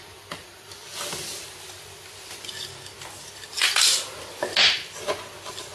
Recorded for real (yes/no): yes